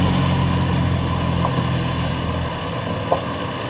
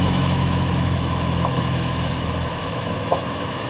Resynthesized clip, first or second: second